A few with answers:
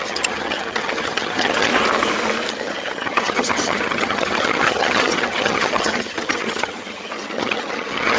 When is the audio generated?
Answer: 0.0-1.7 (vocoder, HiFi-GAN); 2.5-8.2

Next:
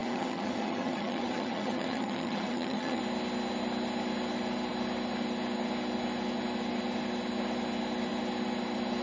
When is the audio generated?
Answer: 0.0-3.0 (vocoder, HiFi-GAN)

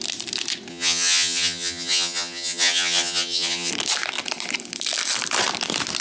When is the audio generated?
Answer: 0.7-3.7 (vocoder, HiFi-GAN)

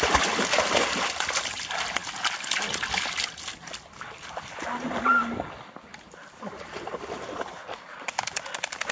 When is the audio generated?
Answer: none